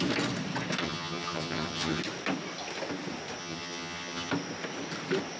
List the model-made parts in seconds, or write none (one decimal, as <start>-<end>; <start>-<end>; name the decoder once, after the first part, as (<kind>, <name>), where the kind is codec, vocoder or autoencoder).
0.8-2.0 (vocoder, HiFi-GAN); 3.4-4.3